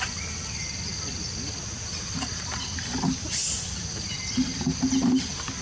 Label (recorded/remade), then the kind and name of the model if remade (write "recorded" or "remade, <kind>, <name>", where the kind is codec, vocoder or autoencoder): recorded